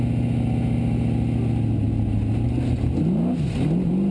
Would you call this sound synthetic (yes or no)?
no